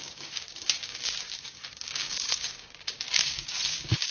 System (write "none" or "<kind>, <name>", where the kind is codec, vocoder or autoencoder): codec, DAC